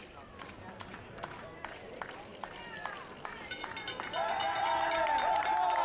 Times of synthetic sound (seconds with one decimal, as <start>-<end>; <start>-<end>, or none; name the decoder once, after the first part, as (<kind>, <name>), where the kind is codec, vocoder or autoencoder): none

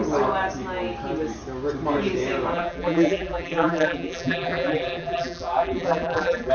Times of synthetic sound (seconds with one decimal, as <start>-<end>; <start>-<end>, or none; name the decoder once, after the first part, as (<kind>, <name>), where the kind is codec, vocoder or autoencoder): 2.5-6.5 (vocoder, BigVGAN v2)

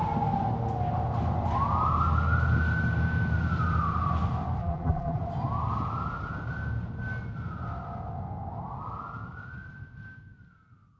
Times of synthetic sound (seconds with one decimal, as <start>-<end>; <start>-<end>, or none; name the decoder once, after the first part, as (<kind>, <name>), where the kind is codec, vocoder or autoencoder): 4.6-5.2 (vocoder, BigVGAN v2)

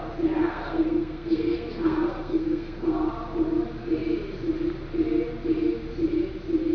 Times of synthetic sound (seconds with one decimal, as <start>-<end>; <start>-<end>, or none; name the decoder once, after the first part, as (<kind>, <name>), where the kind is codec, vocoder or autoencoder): 0.4-3.1 (codec, SNAC)

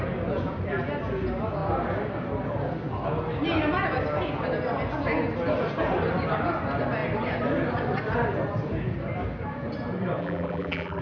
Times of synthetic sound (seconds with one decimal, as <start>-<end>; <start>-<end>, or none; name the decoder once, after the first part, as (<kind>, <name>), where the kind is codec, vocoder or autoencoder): 10.2-11.0 (vocoder, BigVGAN v2)